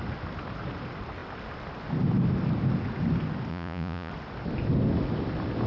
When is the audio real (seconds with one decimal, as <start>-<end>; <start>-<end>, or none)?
0.0-3.5; 4.1-5.7

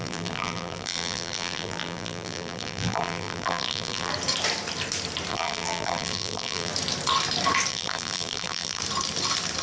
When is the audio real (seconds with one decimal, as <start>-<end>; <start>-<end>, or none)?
4.1-5.3; 6.7-7.7; 8.8-9.6

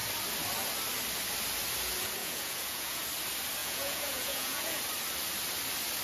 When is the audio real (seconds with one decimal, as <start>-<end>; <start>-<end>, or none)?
0.0-2.2; 3.0-3.6; 4.8-6.0

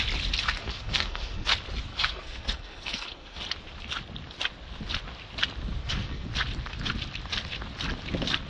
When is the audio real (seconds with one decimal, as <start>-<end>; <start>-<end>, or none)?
0.0-0.6; 1.5-1.9; 3.4-5.8; 6.3-8.5

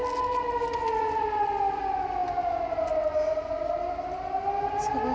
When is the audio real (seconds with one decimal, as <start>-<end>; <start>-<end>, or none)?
0.0-5.1

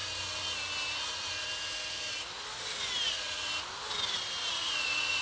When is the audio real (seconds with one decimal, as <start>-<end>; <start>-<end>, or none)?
0.0-3.1; 3.5-4.5